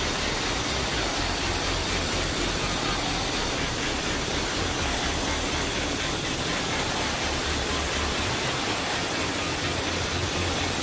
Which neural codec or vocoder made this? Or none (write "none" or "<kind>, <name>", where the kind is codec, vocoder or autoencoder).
none